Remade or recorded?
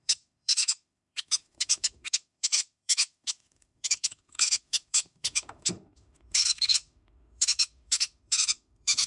remade